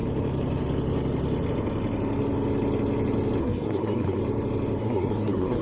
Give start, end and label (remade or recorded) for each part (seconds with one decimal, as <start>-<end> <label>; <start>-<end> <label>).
0.0-3.4 recorded; 3.4-4.2 remade; 4.2-4.8 recorded; 4.8-5.6 remade